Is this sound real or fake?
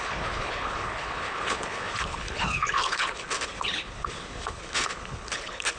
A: fake